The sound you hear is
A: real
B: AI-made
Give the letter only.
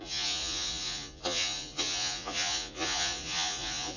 B